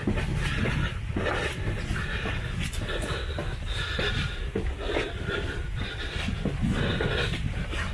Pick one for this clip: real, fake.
real